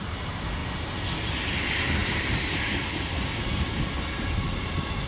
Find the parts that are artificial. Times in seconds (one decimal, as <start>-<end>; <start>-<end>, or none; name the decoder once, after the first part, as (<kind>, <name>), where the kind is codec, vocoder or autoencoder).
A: none